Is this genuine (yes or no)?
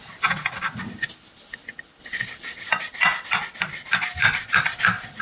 yes